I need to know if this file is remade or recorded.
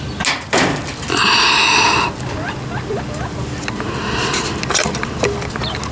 recorded